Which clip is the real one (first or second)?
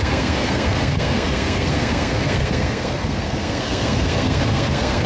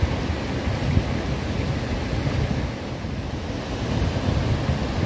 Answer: second